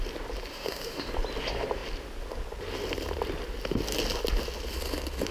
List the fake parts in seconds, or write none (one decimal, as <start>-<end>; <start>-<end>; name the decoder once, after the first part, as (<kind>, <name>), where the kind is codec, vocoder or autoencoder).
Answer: 0.5-1.1 (autoencoder, DAC-VAE)